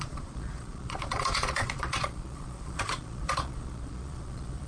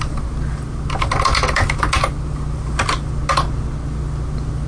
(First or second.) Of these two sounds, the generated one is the first